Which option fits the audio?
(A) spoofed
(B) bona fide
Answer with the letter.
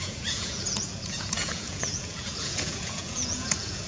A